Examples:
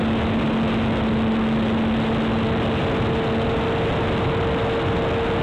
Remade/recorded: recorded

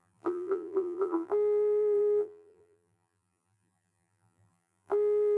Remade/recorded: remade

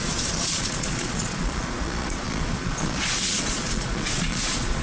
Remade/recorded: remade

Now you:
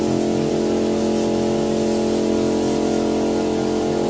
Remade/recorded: recorded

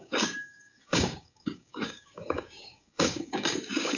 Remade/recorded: remade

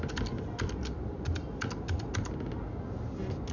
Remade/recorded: recorded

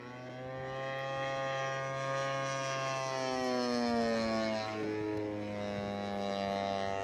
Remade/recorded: recorded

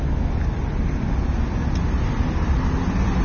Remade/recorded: recorded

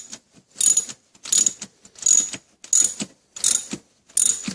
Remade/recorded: recorded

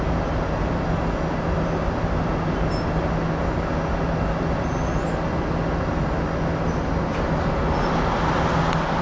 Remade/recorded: recorded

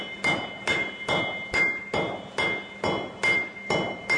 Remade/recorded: recorded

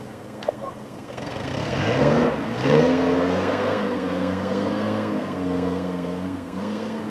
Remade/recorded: remade